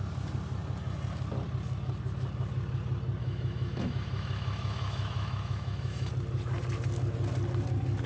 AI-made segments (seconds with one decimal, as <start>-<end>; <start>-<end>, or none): 3.2-6.1